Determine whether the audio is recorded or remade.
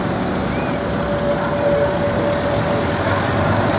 recorded